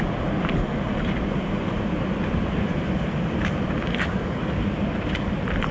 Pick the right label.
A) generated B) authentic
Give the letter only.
A